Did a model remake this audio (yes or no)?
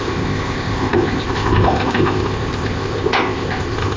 yes